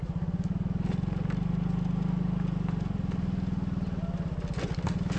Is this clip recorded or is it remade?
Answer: recorded